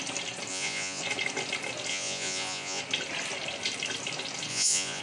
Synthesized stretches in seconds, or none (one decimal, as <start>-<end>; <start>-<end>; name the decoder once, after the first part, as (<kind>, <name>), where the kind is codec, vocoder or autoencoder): 0.5-1.0 (vocoder, Vocos); 1.9-2.8; 4.5-5.0